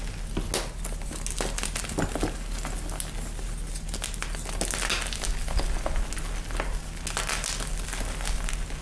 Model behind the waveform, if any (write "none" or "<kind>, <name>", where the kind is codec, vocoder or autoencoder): none